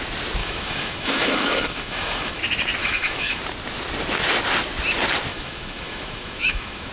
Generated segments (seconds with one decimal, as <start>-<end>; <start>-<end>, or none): 0.4-2.4; 2.8-3.4; 5.3-6.9